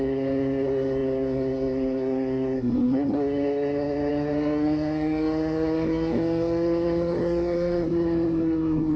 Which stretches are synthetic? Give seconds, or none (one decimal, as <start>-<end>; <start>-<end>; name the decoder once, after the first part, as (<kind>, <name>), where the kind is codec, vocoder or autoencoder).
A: 0.0-9.0 (codec, SNAC)